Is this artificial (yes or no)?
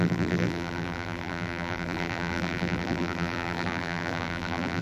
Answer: yes